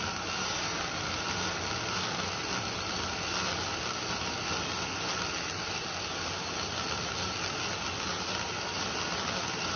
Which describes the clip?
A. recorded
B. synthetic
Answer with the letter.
A